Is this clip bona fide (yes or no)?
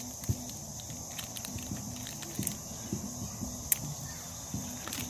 yes